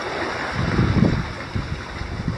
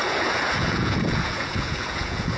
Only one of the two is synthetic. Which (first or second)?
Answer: second